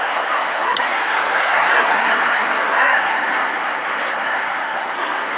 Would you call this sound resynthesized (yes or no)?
yes